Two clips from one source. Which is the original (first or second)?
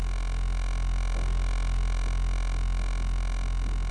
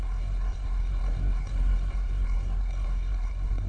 first